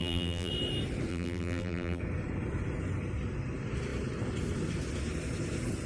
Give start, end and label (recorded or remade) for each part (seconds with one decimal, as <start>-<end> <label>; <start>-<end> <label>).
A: 0.0-0.5 remade; 0.5-1.1 recorded; 1.1-2.0 remade; 2.0-5.9 recorded